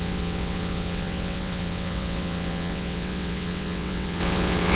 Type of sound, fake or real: fake